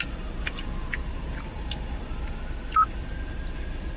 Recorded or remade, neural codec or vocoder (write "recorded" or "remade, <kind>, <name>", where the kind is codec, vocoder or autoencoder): recorded